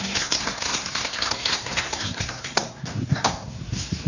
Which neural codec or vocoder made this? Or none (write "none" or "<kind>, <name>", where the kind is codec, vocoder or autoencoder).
codec, SNAC